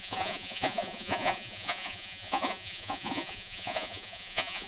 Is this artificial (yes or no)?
yes